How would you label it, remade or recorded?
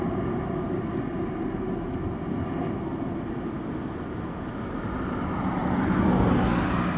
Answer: recorded